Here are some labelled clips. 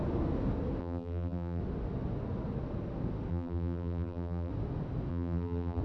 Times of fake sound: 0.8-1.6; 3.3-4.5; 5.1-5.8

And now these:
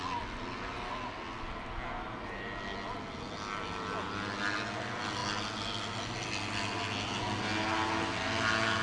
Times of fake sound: none

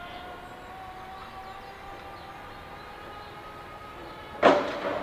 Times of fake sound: none

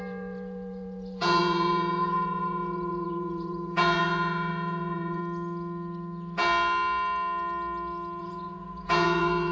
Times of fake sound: 0.0-5.2; 8.2-9.5

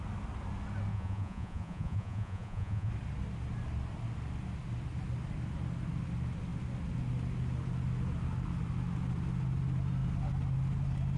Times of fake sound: 0.9-2.9

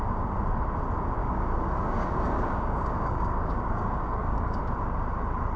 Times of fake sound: 1.2-4.6

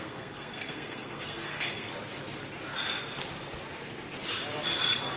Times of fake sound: 0.0-1.9

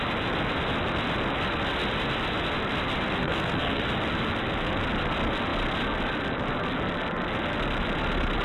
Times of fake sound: 3.2-3.8